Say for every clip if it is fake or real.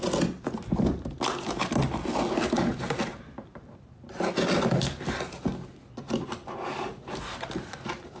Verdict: real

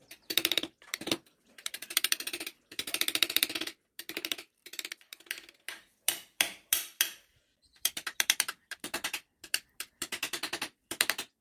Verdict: fake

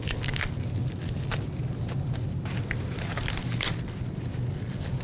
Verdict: real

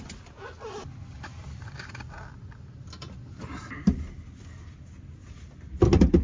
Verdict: real